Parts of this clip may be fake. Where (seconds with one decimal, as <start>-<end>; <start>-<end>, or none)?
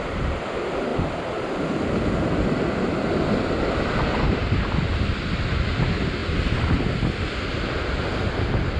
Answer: none